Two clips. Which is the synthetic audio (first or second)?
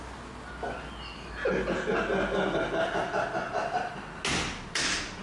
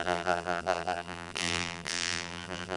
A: second